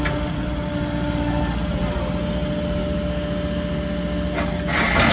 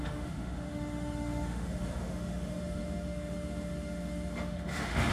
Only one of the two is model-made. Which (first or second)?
second